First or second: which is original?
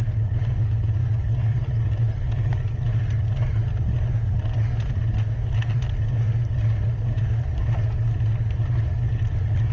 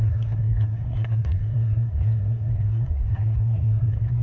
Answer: first